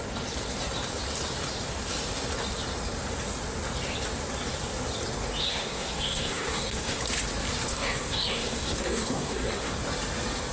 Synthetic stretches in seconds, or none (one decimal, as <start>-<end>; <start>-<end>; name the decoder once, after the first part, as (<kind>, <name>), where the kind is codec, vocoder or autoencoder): 5.5-7.0 (codec, SNAC); 7.7-9.7